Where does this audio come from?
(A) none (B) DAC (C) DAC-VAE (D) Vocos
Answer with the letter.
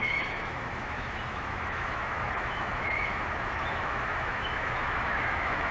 C